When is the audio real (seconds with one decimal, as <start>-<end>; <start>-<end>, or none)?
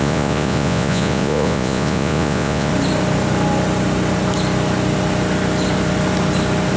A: 2.7-6.8